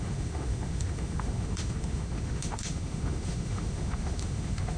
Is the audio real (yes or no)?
no